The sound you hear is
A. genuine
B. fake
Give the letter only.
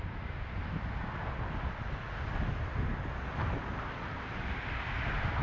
A